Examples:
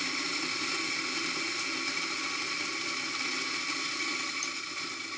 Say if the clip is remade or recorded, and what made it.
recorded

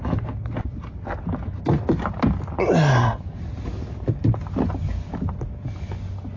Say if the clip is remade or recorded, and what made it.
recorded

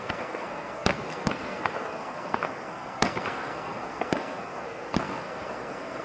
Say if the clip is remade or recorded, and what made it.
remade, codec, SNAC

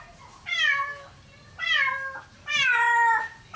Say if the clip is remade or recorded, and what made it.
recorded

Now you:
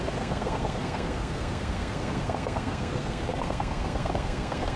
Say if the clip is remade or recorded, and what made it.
remade, codec, SNAC